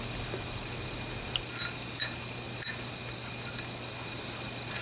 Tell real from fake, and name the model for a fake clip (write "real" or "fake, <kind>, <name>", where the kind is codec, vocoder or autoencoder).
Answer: real